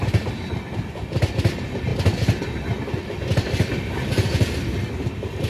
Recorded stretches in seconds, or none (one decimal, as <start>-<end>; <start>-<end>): 1.9-5.5